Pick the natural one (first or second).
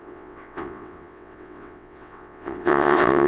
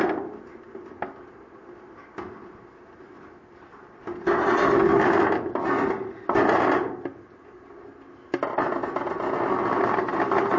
second